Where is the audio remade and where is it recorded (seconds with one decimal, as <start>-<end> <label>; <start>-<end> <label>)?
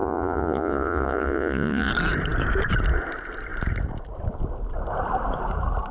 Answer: 0.0-1.9 remade; 1.9-5.9 recorded